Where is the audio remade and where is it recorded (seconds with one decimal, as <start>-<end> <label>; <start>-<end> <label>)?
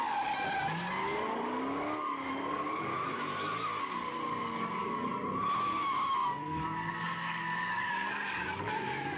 0.0-2.9 remade; 2.9-3.8 recorded; 3.8-5.1 remade; 5.1-5.6 recorded; 5.6-9.2 remade